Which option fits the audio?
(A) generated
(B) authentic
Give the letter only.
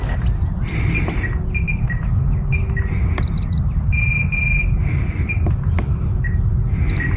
B